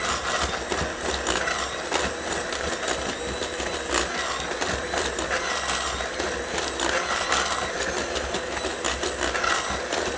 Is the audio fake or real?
real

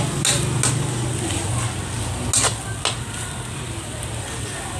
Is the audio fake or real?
real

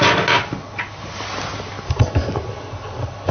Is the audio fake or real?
real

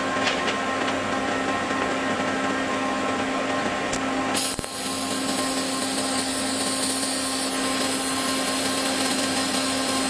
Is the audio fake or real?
real